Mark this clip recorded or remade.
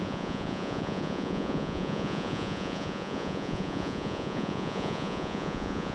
remade